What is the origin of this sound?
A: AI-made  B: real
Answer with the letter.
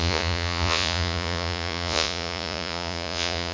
A